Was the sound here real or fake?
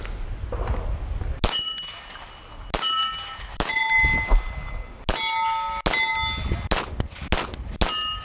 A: real